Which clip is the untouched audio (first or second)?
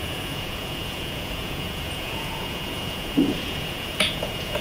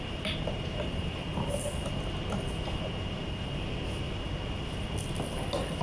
second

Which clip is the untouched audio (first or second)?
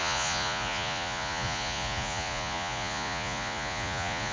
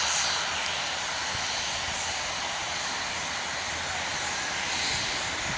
second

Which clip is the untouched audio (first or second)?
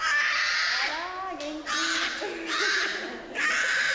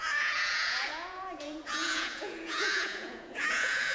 first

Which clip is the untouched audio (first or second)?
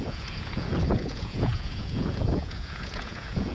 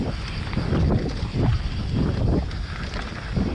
second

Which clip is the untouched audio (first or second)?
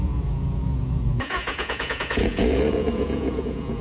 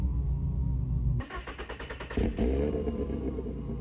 second